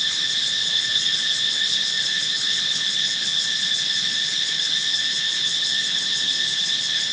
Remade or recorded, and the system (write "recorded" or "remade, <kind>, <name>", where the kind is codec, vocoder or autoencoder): remade, codec, HILCodec